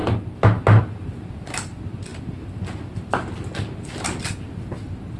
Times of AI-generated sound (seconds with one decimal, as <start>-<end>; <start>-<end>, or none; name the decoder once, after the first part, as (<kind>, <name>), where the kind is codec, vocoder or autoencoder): none